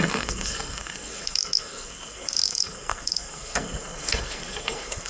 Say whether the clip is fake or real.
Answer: fake